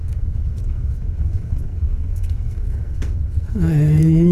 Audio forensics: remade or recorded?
remade